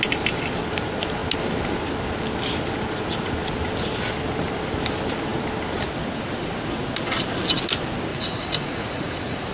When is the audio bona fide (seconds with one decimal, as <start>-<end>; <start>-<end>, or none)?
0.0-8.1